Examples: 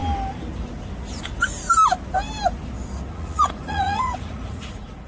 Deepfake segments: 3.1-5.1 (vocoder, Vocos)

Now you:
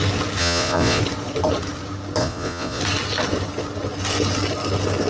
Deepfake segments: 0.4-1.0 (vocoder, Vocos); 2.2-2.8

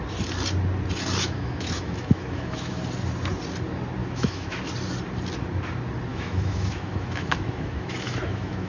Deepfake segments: 1.2-2.8 (autoencoder, DAC-VAE); 4.0-4.6; 6.1-8.7

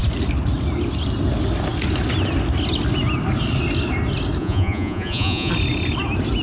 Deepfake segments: 4.4-5.5 (vocoder, Vocos)